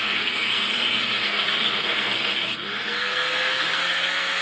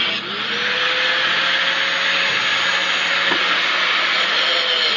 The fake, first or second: first